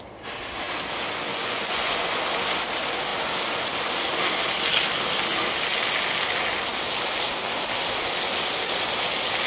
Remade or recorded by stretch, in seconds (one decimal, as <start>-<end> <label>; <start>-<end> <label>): 0.0-1.3 recorded; 1.3-2.2 remade; 2.2-9.5 recorded